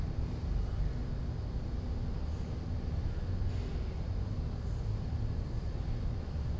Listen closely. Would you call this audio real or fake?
real